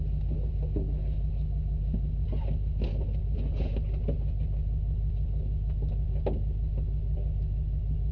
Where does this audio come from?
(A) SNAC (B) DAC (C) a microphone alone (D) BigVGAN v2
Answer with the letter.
C